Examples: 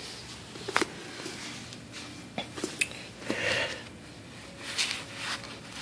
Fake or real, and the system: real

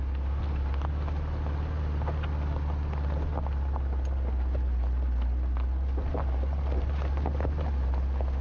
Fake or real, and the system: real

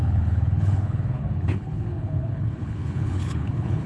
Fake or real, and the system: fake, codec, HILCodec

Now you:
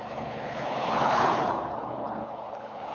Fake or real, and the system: fake, codec, HILCodec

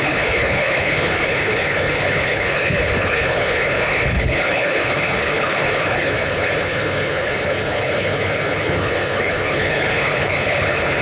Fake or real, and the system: fake, codec, HILCodec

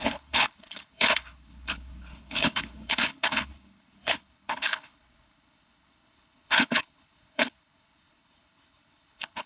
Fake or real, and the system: fake, codec, HILCodec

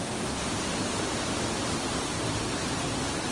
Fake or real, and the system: real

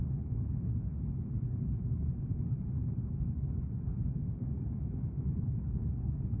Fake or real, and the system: fake, codec, HILCodec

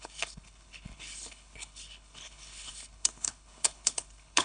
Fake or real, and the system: fake, codec, HILCodec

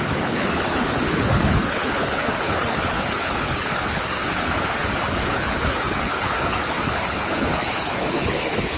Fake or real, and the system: fake, codec, HILCodec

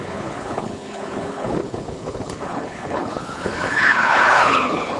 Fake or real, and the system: fake, codec, HILCodec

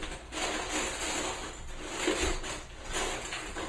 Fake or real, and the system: real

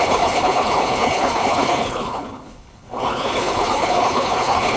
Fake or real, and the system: fake, codec, HILCodec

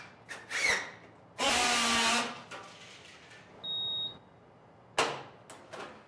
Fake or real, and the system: real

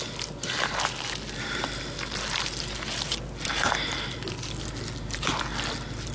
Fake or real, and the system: real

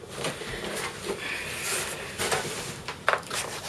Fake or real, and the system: real